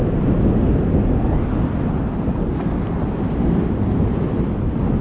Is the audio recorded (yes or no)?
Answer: yes